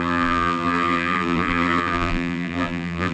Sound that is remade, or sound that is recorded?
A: remade